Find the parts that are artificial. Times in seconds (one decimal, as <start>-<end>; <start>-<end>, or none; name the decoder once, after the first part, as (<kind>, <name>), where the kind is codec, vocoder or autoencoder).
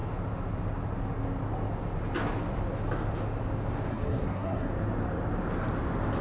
3.9-4.7 (codec, SNAC)